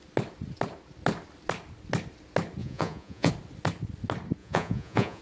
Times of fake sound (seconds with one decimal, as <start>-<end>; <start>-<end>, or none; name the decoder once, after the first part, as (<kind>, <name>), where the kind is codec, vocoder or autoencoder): 2.6-3.3 (vocoder, Vocos); 4.4-5.2